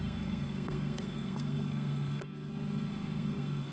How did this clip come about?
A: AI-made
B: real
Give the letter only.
A